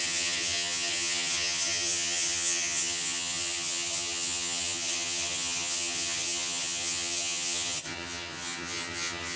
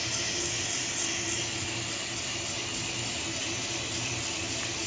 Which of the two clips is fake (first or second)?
first